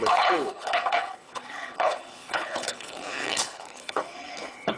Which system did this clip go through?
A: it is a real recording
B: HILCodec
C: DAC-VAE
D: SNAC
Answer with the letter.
B